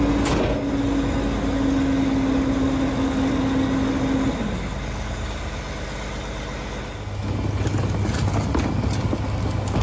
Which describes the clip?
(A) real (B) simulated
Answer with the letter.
A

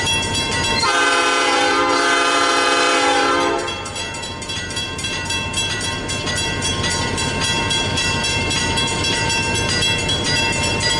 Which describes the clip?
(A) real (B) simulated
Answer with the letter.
B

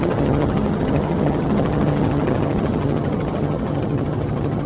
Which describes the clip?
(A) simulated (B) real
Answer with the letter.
A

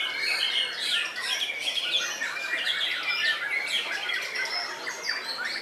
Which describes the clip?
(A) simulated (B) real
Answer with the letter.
B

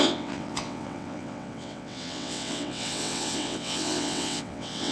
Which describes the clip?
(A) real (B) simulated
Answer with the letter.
B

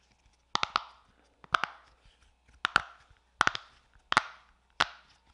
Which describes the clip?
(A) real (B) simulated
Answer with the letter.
A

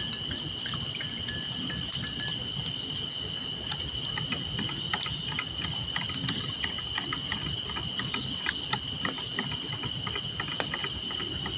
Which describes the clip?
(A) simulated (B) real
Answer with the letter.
B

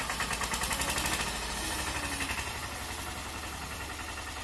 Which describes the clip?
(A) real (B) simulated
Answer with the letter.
A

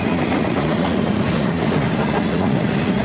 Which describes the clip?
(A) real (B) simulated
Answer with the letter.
B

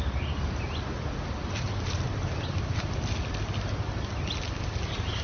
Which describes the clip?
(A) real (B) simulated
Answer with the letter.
A